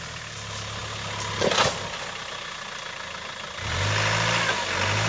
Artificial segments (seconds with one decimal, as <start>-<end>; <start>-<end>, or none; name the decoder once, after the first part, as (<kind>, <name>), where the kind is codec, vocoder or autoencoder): none